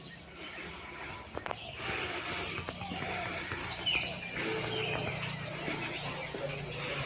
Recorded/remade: recorded